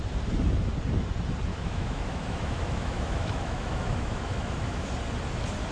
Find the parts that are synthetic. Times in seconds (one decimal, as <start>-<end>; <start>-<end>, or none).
1.5-4.9